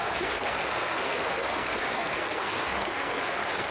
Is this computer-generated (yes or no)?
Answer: yes